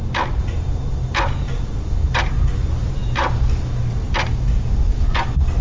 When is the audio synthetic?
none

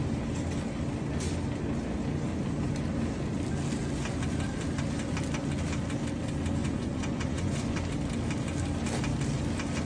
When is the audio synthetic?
6.6-7.8 (vocoder, Vocos)

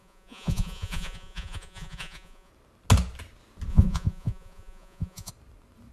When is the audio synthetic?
0.0-2.5 (vocoder, Vocos); 3.7-5.3